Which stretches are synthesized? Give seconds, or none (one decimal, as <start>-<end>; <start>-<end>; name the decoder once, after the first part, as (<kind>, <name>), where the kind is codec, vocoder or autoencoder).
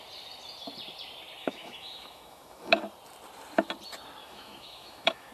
1.4-2.8 (autoencoder, DAC-VAE); 4.2-5.3